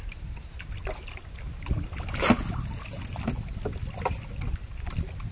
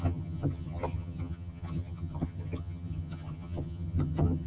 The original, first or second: first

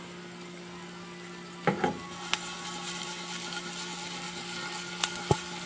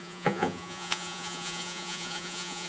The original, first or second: first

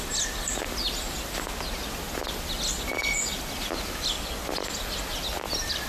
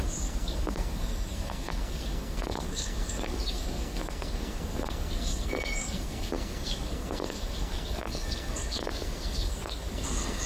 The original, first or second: first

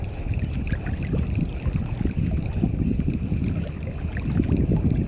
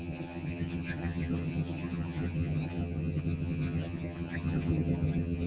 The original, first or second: first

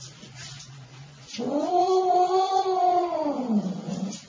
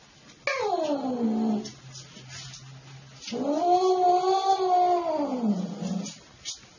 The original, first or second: second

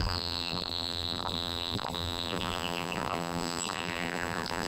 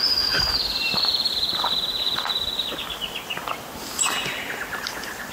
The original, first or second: second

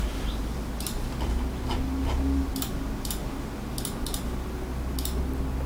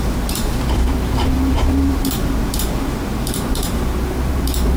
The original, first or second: first